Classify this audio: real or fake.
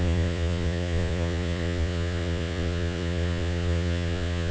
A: fake